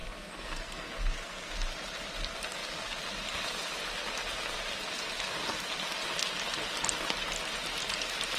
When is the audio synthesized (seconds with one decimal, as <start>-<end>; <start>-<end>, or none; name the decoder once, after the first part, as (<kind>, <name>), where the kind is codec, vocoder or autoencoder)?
0.0-1.5 (codec, SNAC)

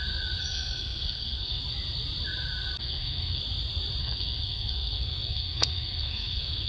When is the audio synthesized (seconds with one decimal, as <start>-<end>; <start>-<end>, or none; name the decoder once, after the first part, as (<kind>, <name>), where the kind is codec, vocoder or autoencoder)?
0.4-1.6 (codec, SNAC); 2.8-3.4; 4.0-6.7

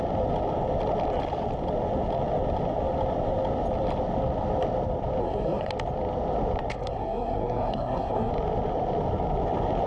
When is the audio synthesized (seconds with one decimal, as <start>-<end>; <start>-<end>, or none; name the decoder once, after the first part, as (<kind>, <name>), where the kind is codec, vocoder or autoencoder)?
5.2-5.7 (codec, SNAC); 6.7-8.3

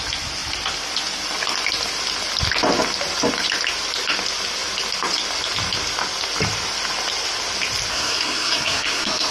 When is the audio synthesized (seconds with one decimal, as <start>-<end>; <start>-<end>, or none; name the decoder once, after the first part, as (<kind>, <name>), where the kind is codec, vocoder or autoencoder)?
7.9-9.3 (codec, SNAC)

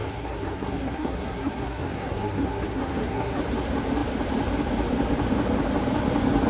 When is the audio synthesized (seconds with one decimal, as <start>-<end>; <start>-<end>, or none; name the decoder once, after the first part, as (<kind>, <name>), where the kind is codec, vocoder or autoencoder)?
0.0-3.4 (codec, SNAC)

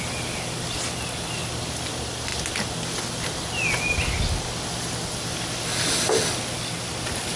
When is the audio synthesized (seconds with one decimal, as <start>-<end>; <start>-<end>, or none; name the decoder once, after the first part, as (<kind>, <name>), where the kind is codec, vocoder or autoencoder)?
none

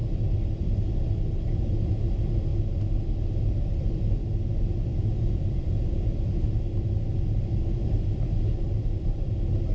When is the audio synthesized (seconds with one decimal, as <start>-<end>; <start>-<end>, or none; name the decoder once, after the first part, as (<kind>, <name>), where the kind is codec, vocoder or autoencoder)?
none